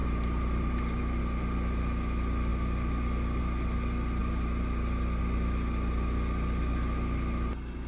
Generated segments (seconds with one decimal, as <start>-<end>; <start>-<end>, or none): 0.0-1.2; 4.2-5.2

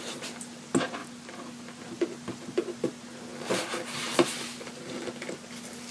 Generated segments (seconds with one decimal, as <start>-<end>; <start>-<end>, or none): 0.0-1.0; 1.8-3.3; 4.1-5.9

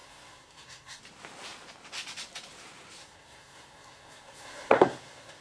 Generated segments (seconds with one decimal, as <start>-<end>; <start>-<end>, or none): 0.0-1.0; 3.0-5.4